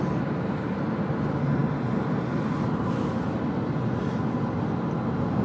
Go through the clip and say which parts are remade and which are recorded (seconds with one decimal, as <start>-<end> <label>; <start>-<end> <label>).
0.0-5.4 recorded